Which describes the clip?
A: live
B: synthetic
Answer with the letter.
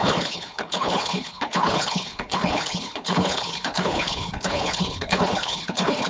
B